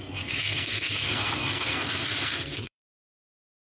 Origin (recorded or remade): remade